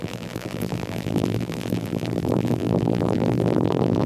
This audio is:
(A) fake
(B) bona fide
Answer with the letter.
A